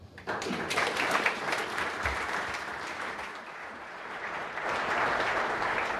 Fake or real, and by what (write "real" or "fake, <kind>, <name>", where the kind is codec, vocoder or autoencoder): fake, vocoder, BigVGAN v2